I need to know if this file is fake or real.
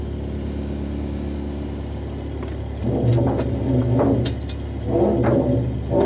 real